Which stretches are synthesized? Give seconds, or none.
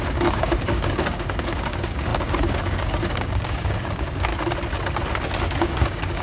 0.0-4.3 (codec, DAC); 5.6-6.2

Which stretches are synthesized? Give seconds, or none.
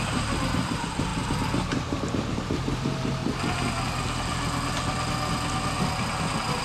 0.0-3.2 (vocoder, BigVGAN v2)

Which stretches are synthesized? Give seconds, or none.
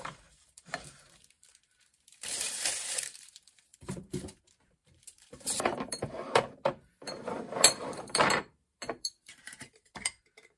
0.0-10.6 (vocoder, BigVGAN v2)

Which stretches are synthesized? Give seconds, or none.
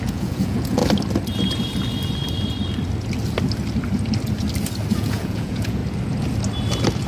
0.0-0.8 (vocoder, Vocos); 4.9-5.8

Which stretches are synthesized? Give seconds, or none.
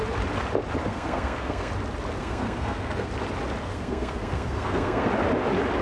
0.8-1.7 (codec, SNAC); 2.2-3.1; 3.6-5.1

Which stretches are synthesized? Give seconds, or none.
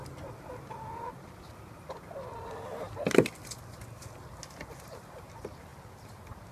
none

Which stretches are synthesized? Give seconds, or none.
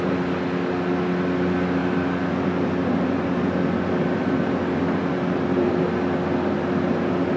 none